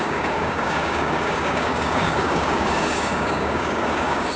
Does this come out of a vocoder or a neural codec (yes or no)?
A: yes